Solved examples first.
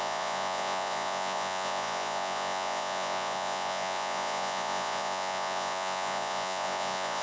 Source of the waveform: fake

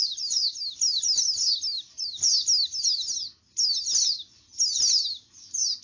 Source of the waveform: real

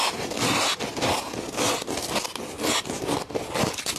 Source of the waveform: real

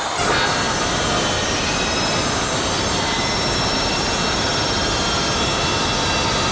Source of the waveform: real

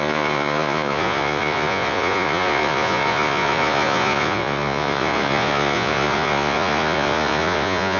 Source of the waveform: fake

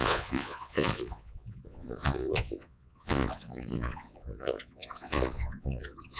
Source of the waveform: fake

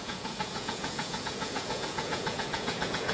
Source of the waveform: fake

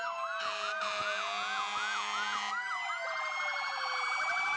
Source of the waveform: real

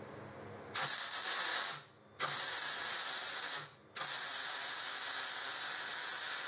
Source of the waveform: real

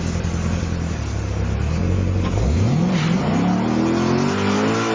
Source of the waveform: real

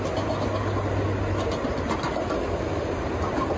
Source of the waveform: real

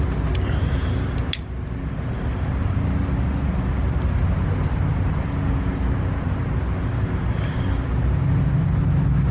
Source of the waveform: real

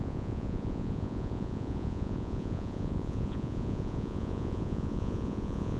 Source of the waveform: fake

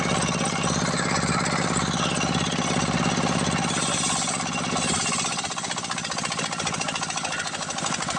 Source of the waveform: real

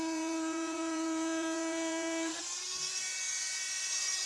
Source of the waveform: fake